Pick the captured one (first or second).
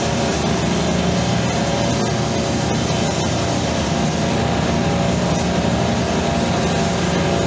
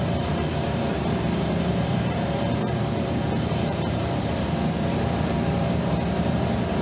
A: first